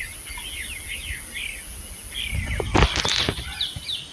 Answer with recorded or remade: recorded